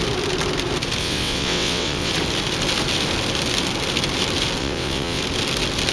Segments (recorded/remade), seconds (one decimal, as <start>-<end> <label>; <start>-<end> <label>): 0.0-1.0 recorded; 1.0-2.1 remade; 2.1-4.6 recorded; 4.6-5.2 remade; 5.2-5.9 recorded